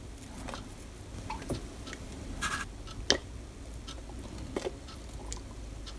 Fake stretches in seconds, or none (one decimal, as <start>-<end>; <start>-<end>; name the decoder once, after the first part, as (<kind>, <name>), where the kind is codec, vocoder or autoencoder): none